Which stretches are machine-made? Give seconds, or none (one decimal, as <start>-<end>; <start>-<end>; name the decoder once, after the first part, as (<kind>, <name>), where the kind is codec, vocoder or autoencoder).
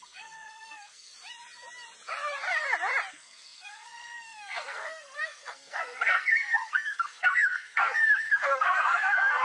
0.0-1.1 (codec, SNAC); 3.1-9.4